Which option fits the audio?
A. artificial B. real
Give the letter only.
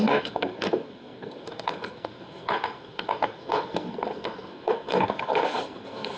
A